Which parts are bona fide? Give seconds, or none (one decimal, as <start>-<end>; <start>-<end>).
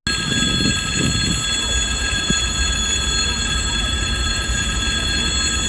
0.0-1.9; 5.3-5.7